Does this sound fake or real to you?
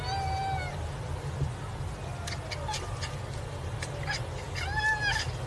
real